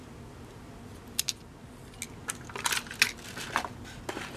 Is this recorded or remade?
recorded